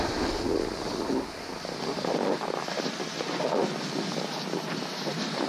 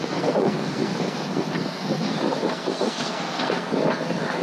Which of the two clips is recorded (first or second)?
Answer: first